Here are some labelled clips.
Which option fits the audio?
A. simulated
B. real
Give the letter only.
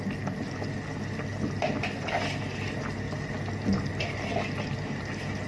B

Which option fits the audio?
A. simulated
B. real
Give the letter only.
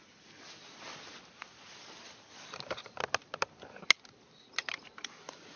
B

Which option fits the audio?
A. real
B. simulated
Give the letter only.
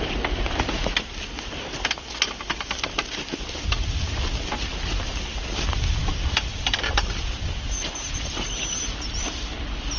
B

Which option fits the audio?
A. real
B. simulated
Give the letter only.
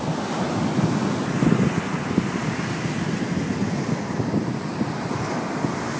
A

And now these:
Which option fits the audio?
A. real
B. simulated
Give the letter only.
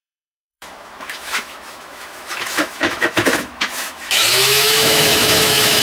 B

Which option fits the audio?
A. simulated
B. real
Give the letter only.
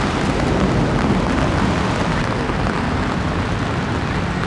B